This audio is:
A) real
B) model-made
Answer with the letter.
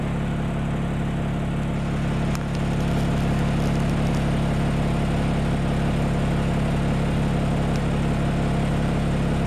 A